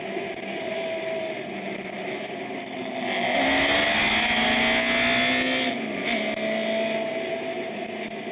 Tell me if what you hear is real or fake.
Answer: real